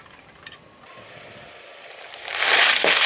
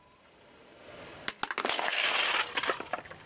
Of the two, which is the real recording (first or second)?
second